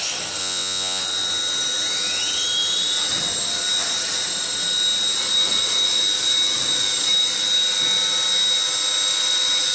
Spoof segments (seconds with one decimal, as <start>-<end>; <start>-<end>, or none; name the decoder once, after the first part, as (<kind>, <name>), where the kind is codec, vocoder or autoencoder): 0.4-1.0 (vocoder, Vocos)